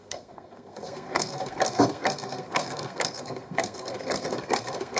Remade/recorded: remade